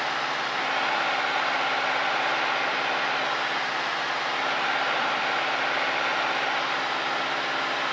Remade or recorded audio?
recorded